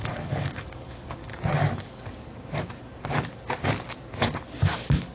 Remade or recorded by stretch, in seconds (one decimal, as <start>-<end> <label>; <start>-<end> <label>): 0.0-1.3 remade; 1.3-4.4 recorded; 4.4-5.1 remade